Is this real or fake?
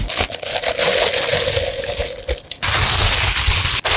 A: real